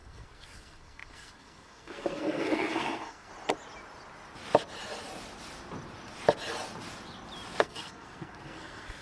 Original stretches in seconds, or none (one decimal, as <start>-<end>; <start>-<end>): 3.3-7.6

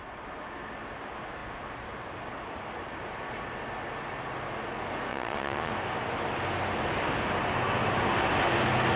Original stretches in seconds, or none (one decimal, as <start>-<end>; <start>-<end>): 0.0-5.1; 5.7-9.0

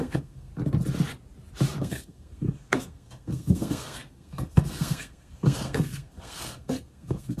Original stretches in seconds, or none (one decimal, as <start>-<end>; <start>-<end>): 0.5-1.8

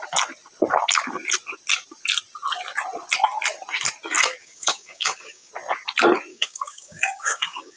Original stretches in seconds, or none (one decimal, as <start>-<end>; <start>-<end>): 0.0-4.4; 5.5-6.3